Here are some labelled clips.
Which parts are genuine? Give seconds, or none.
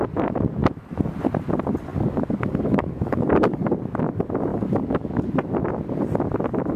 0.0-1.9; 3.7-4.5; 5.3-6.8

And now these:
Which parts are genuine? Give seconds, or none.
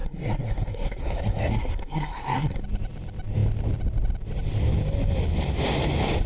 2.6-6.3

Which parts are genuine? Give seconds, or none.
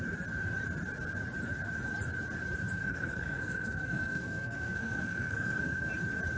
0.0-2.8; 5.9-6.4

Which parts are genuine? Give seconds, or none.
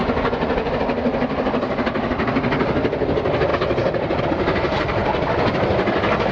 0.7-6.3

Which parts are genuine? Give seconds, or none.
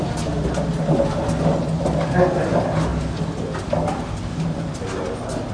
0.0-5.5